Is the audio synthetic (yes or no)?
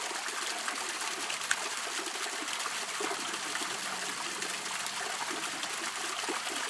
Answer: no